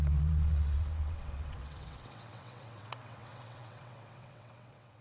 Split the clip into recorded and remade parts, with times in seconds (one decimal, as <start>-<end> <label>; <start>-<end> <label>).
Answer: 0.0-5.0 remade